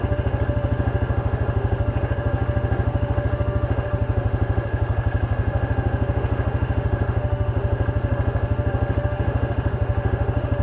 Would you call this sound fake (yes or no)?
yes